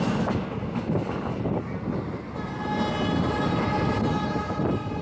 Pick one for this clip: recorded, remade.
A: recorded